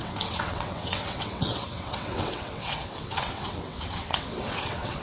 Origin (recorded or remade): remade